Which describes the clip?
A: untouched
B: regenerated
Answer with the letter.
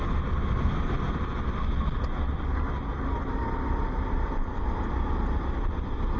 A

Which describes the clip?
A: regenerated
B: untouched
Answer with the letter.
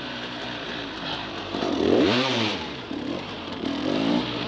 A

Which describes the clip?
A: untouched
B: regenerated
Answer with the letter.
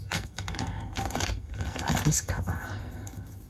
B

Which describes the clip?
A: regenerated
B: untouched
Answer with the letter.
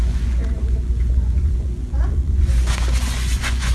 A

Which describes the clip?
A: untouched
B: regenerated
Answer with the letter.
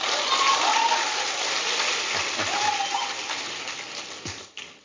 A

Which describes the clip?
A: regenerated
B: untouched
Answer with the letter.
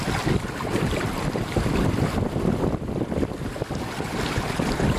B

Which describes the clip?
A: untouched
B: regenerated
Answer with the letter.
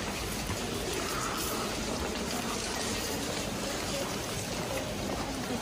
A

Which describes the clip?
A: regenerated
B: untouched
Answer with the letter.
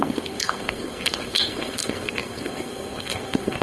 A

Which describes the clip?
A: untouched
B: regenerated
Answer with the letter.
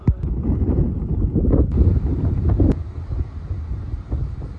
A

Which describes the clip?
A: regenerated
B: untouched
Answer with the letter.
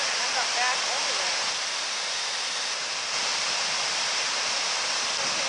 B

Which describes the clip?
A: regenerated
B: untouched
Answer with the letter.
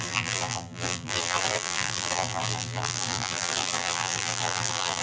A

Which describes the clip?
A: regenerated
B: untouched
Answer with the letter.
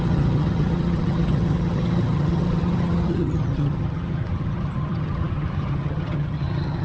A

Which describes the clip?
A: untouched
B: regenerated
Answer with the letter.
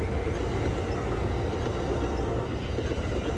A